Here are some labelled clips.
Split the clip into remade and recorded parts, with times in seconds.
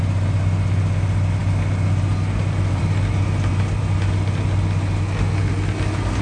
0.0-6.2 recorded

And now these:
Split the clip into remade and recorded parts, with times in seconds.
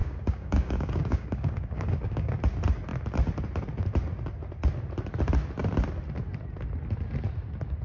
0.0-2.3 remade; 2.3-7.8 recorded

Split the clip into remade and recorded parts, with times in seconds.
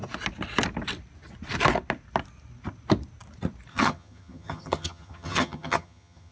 0.0-3.7 recorded; 3.7-6.3 remade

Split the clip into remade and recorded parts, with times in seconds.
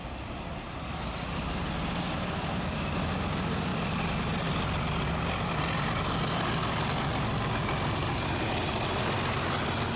0.0-10.0 recorded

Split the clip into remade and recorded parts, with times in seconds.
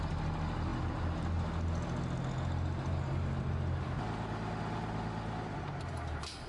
0.0-6.5 recorded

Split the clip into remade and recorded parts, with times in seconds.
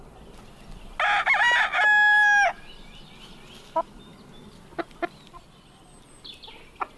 0.0-7.0 recorded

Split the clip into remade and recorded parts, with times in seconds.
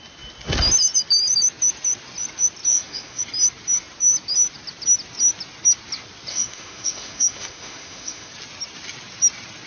0.0-2.7 recorded; 2.7-3.2 remade; 3.2-6.3 recorded; 6.3-8.3 remade; 8.3-9.7 recorded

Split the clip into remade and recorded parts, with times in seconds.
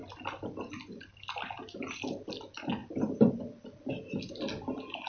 0.0-5.1 recorded